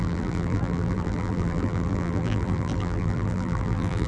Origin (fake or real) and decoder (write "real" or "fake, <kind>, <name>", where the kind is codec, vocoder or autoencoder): fake, vocoder, BigVGAN v2